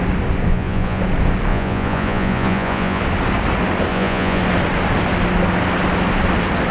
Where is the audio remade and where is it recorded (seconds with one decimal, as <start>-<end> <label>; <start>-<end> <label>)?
0.0-0.5 recorded; 0.5-1.0 remade; 1.0-1.5 recorded; 1.5-3.0 remade; 3.0-3.9 recorded; 3.9-4.4 remade; 4.4-6.7 recorded